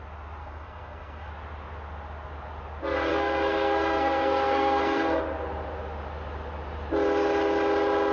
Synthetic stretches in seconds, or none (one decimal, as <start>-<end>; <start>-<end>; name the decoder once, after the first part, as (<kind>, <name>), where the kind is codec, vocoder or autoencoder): 0.4-1.3 (codec, SNAC); 3.1-5.2